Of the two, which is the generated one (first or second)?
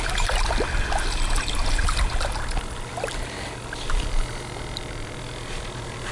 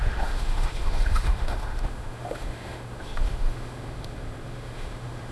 second